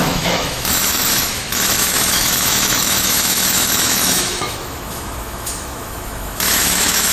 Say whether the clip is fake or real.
fake